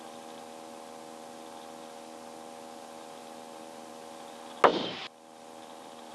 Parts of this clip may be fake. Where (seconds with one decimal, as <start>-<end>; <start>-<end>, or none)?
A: 3.2-3.9; 4.7-6.1